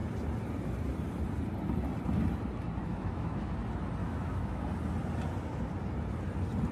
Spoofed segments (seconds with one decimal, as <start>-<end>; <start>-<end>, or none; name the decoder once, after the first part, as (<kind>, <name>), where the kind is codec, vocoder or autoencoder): 2.9-3.5 (autoencoder, DAC-VAE); 4.0-4.6